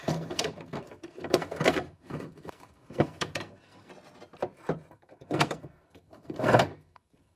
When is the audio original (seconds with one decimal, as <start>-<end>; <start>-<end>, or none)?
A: 3.9-4.9